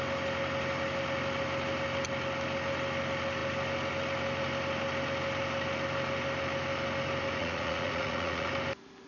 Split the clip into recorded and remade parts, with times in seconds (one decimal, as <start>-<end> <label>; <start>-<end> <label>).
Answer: 0.0-7.4 recorded; 7.4-8.5 remade; 8.5-9.1 recorded